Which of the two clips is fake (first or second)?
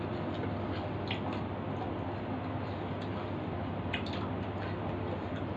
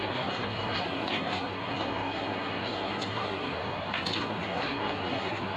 second